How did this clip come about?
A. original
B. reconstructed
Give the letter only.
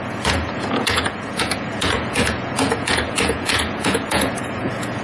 B